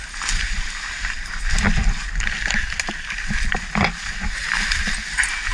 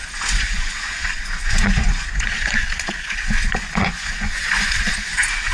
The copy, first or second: second